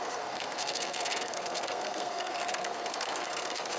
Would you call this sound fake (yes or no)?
yes